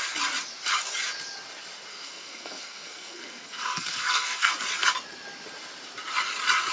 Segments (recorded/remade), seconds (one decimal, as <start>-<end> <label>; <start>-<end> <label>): 0.0-1.9 recorded; 1.9-4.5 remade; 4.5-6.7 recorded